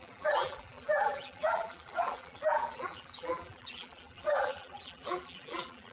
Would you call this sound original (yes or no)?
no